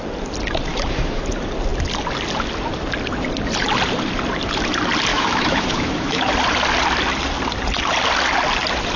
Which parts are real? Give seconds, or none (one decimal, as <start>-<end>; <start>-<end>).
0.0-0.7; 1.2-5.1; 6.3-9.0